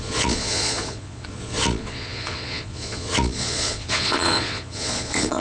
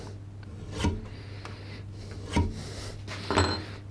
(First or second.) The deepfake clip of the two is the first